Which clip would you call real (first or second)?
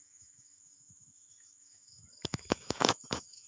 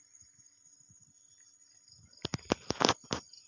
second